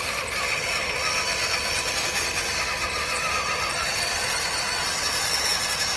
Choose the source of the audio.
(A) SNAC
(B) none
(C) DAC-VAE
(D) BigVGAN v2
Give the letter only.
B